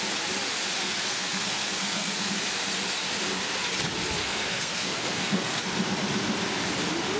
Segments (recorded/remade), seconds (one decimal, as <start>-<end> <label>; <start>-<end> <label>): 0.0-0.8 recorded; 0.8-2.3 remade; 2.3-4.2 recorded; 4.2-5.6 remade; 5.6-7.2 recorded